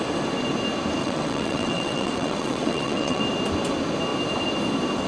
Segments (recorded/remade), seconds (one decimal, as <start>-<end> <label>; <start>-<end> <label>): 0.0-1.0 recorded; 1.0-3.2 remade; 3.2-5.1 recorded